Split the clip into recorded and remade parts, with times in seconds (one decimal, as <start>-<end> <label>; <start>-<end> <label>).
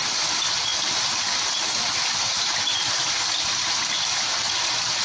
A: 0.0-5.0 recorded